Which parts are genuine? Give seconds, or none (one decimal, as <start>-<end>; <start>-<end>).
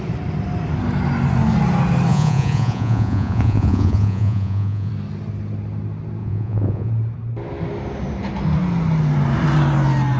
0.0-2.1; 4.9-6.2; 6.9-10.2